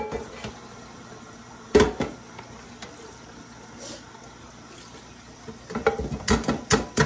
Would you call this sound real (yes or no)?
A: yes